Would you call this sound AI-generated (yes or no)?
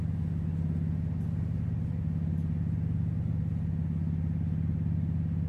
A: no